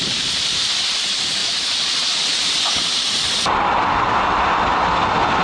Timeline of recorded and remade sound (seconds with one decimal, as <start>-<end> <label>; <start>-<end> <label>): 0.0-5.4 recorded